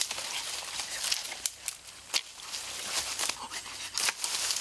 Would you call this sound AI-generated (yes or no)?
no